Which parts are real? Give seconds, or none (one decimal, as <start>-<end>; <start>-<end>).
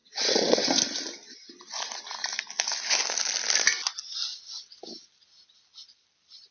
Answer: 0.7-4.3; 4.8-6.5